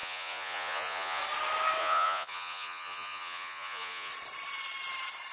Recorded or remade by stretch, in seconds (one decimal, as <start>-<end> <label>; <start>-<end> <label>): 0.0-1.2 remade; 1.2-1.8 recorded; 1.8-4.1 remade; 4.1-5.3 recorded